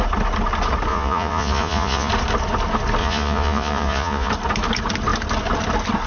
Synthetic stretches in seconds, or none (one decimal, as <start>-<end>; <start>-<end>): 0.9-2.1; 3.0-4.3